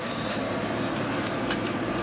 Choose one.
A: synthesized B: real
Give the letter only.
A